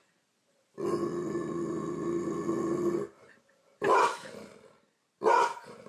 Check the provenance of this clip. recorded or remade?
recorded